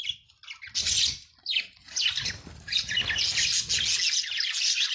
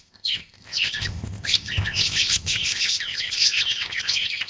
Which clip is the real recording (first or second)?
first